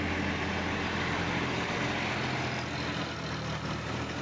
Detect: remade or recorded recorded